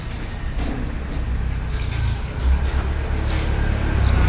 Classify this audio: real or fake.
real